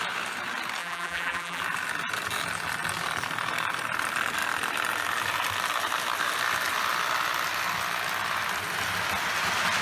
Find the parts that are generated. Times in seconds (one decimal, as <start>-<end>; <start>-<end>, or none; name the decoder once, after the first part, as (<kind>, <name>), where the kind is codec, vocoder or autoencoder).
0.8-1.6 (vocoder, BigVGAN v2)